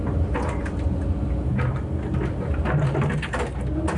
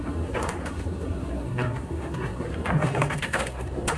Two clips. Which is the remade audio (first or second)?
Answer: second